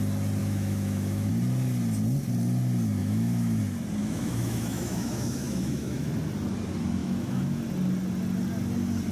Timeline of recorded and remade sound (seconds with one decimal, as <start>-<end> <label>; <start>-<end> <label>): 0.0-0.4 recorded; 0.4-1.3 remade; 1.3-3.0 recorded; 3.0-3.6 remade; 3.6-4.0 recorded; 4.0-6.1 remade; 6.1-7.0 recorded; 7.0-7.6 remade; 7.6-9.1 recorded